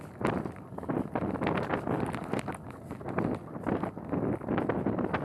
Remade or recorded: recorded